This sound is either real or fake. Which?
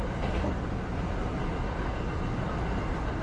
real